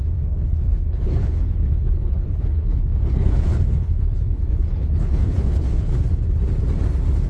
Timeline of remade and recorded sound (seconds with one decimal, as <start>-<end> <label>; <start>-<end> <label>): 0.0-5.9 remade; 5.9-7.3 recorded